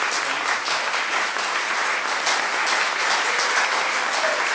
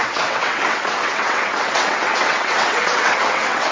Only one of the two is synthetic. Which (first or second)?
second